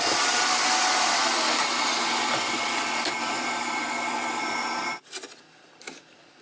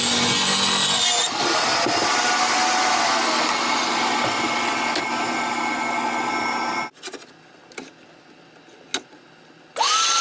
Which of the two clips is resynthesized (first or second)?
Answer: first